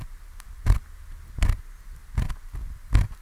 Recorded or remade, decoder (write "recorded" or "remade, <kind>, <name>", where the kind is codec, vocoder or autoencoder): recorded